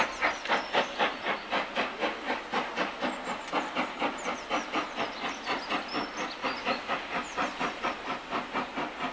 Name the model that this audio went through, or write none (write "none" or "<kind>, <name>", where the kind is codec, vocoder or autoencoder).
none